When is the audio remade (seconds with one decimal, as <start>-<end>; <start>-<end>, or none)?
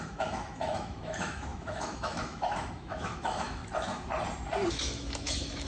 0.0-3.6; 4.7-5.7